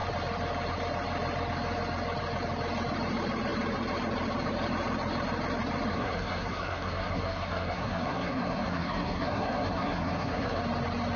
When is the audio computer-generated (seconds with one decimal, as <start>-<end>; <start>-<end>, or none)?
5.9-10.6